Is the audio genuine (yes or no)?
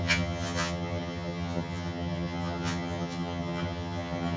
no